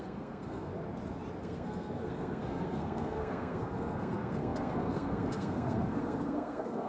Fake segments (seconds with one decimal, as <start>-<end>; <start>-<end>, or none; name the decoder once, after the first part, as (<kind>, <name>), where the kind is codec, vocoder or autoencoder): 0.0-0.7 (codec, SNAC); 1.4-6.9